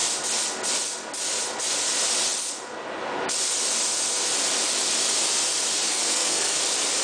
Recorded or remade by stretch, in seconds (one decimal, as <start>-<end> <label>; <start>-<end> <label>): 0.0-5.9 recorded; 5.9-6.6 remade; 6.6-7.0 recorded